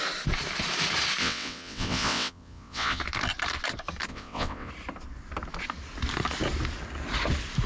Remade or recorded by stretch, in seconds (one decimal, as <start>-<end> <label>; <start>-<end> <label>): 0.0-1.2 recorded; 1.2-3.0 remade; 3.0-4.1 recorded; 4.1-4.7 remade; 4.7-7.7 recorded